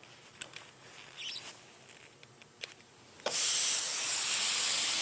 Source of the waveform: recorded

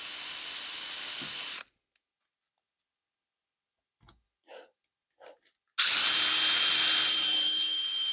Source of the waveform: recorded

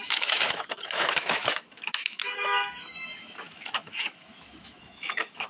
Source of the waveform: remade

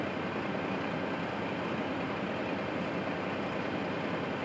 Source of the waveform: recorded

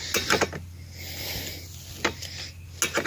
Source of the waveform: recorded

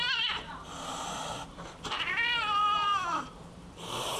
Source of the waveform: remade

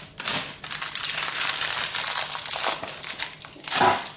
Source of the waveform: recorded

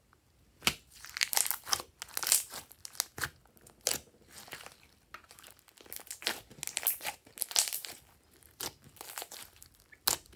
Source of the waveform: recorded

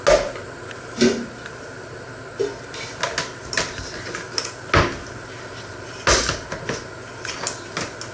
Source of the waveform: recorded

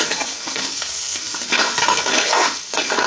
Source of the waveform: remade